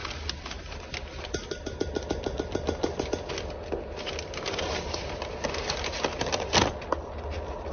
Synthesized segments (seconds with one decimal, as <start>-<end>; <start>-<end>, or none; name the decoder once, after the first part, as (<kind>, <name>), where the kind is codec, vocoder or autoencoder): none